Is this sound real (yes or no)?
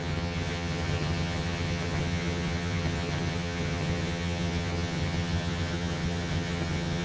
no